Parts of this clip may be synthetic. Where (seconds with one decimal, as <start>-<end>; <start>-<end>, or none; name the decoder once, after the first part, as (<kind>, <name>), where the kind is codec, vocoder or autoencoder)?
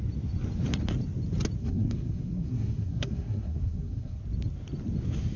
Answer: 1.6-4.2 (codec, SNAC)